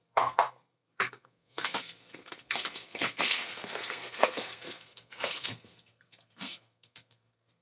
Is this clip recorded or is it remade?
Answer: remade